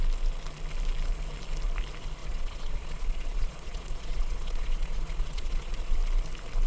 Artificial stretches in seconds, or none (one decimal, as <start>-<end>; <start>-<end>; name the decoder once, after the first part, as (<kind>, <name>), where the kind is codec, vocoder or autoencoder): 2.2-6.0 (vocoder, Vocos)